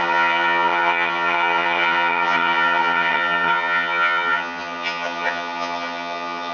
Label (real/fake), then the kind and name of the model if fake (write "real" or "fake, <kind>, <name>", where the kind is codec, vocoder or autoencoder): fake, vocoder, HiFi-GAN